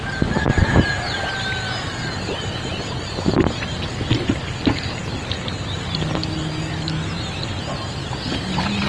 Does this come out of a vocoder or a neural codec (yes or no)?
no